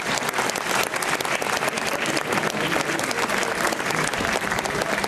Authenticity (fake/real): real